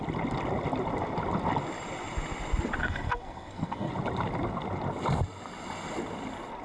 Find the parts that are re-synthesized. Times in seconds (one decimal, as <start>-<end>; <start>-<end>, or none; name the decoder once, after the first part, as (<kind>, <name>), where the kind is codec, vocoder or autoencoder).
2.8-3.9 (codec, SNAC)